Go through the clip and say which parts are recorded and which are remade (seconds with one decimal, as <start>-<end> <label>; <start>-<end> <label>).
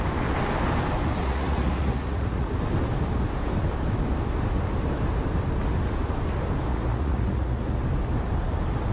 0.0-1.2 recorded; 1.2-2.5 remade; 2.5-6.7 recorded; 6.7-7.8 remade; 7.8-8.9 recorded